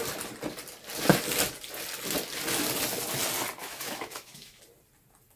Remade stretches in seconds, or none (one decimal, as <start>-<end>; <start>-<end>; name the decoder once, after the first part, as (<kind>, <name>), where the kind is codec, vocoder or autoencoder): 3.6-4.6 (autoencoder, DAC-VAE)